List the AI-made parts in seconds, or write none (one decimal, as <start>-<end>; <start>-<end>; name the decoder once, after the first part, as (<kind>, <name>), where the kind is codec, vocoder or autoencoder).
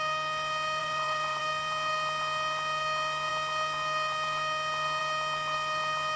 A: 0.8-1.4 (vocoder, Vocos)